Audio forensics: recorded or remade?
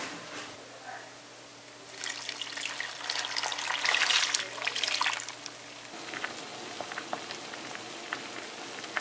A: recorded